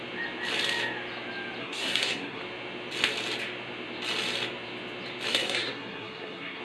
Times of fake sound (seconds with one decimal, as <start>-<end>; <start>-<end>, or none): 1.6-2.4; 5.3-6.6